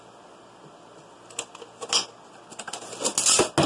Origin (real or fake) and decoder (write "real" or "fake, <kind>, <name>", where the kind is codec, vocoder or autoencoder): real